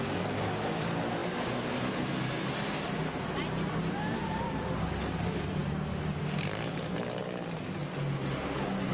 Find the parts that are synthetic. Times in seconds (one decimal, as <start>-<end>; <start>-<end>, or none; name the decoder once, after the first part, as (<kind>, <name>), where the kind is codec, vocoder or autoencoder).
4.2-4.9 (vocoder, BigVGAN v2)